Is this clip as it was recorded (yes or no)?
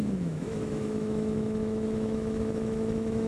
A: no